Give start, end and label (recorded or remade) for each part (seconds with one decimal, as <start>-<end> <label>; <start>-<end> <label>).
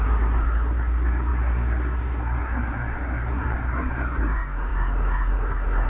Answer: 0.0-5.9 remade